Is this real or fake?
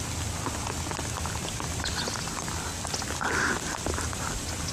real